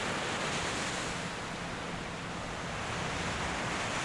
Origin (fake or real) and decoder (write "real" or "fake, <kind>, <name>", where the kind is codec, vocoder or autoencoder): real